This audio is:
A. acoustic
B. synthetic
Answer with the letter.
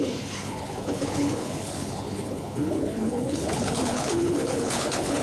B